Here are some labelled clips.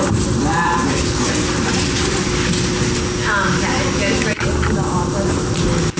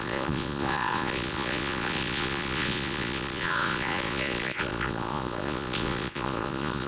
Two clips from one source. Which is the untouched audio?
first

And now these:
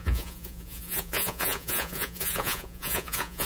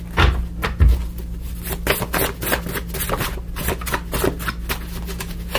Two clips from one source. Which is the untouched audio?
second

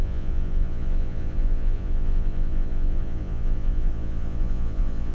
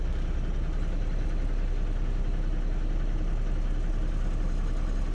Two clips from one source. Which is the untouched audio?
second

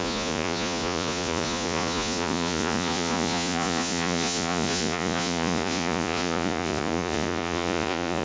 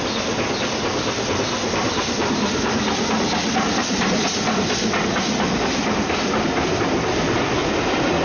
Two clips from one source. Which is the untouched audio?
second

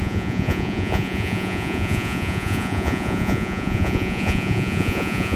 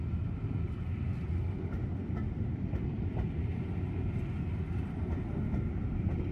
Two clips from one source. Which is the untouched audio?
second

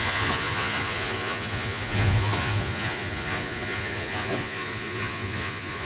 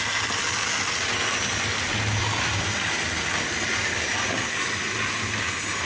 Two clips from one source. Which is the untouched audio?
second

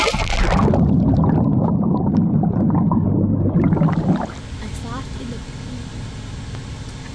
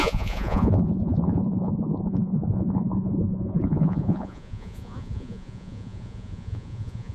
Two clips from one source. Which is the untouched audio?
first